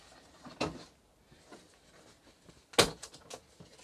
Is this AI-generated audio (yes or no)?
no